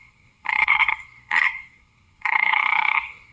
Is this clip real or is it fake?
fake